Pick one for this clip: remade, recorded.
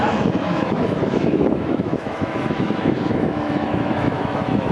remade